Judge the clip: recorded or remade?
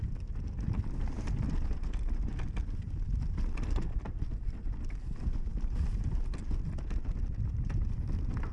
recorded